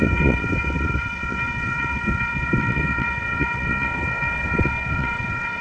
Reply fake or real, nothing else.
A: fake